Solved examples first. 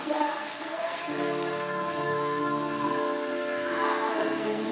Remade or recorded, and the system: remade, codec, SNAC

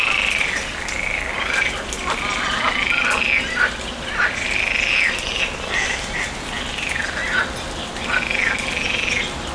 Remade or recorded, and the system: recorded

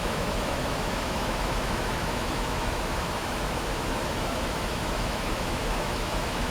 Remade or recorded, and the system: remade, autoencoder, DAC-VAE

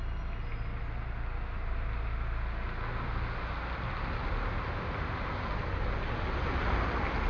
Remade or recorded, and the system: recorded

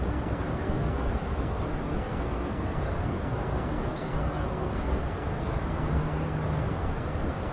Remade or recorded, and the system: remade, codec, SNAC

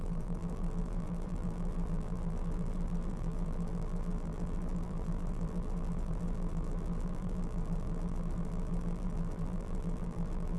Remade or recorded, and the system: remade, vocoder, BigVGAN v2